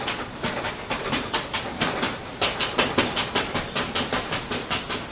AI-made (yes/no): no